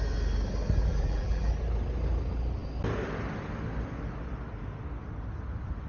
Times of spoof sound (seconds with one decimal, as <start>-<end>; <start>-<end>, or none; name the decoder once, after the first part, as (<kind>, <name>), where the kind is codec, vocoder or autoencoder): 0.8-1.5 (vocoder, BigVGAN v2)